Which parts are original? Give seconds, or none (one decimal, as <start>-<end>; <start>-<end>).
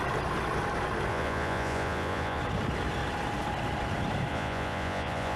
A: 0.0-1.1; 2.4-4.3